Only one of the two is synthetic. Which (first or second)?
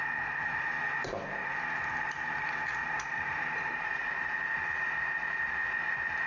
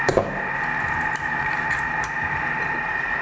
second